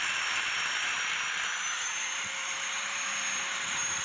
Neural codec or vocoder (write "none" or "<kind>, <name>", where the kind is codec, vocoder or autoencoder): vocoder, BigVGAN v2